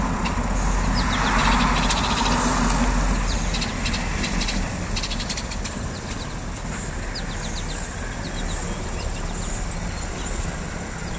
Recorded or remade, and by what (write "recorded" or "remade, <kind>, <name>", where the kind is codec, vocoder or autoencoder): recorded